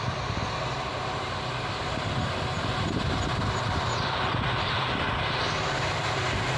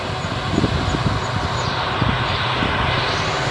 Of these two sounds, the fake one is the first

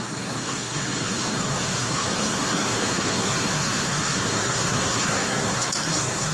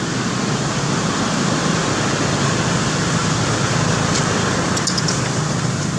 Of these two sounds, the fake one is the first